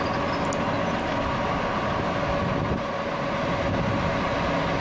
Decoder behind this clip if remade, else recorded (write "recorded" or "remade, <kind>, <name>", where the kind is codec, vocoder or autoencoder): recorded